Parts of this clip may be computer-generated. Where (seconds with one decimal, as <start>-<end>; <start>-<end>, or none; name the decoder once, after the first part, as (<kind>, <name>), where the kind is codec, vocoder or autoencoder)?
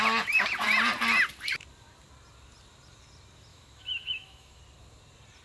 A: 3.5-4.6 (autoencoder, DAC-VAE)